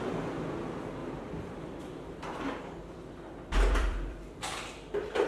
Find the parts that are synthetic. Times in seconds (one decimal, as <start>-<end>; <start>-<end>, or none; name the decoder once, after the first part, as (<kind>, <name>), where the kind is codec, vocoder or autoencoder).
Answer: 1.0-4.2 (vocoder, BigVGAN v2)

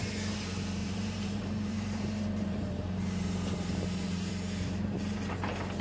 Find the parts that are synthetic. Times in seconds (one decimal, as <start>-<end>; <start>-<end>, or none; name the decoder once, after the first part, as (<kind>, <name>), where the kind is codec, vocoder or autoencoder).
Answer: 0.8-4.3 (vocoder, BigVGAN v2)

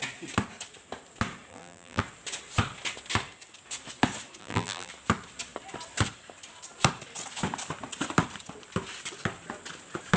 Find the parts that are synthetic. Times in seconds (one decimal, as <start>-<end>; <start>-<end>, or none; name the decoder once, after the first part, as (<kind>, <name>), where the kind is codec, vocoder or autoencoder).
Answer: 1.5-2.0 (vocoder, BigVGAN v2); 4.4-4.9

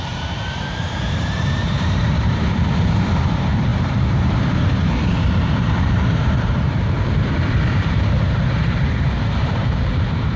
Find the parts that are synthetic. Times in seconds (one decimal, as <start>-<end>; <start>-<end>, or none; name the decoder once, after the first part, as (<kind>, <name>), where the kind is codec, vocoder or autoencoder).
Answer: 0.0-10.4 (vocoder, BigVGAN v2)

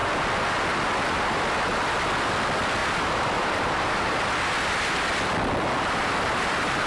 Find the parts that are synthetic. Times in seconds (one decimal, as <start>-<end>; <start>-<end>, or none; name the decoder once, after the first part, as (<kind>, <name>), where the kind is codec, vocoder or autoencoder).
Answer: 2.8-4.3 (vocoder, BigVGAN v2); 6.0-6.9